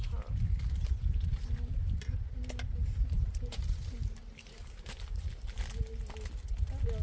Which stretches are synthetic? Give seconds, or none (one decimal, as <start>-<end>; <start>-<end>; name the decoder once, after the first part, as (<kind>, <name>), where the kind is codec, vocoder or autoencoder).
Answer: 2.8-5.2 (vocoder, BigVGAN v2)